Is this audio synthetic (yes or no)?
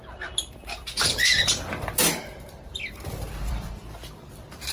yes